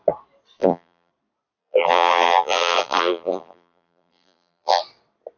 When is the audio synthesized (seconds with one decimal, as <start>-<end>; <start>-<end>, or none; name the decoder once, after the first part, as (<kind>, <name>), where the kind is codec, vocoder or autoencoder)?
0.6-1.1 (vocoder, BigVGAN v2); 1.6-4.8